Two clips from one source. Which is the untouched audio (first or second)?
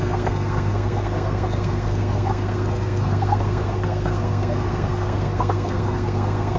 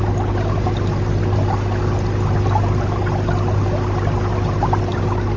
second